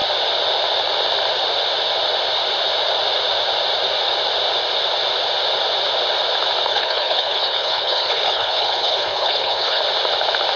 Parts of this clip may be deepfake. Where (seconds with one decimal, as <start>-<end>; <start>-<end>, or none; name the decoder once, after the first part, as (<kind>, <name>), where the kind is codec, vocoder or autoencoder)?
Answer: 6.7-9.8 (codec, HILCodec)